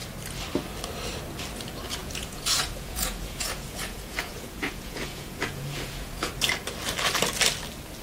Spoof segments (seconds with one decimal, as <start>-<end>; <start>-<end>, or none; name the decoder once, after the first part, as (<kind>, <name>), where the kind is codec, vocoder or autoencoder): 2.0-6.3 (vocoder, Vocos)